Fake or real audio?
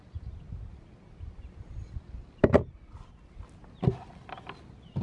real